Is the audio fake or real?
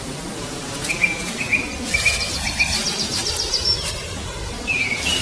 fake